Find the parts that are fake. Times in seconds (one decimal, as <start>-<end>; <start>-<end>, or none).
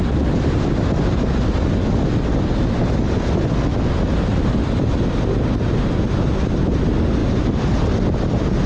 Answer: 7.2-7.8